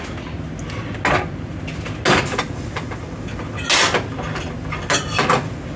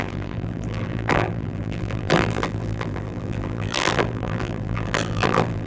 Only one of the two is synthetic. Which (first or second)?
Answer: second